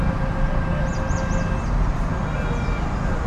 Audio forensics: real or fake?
real